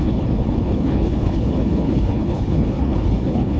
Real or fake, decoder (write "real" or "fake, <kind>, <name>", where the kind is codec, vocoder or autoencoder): fake, codec, HILCodec